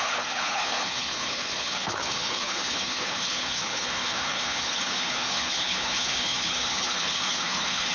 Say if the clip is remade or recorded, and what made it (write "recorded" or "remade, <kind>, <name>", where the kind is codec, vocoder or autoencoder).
remade, codec, HILCodec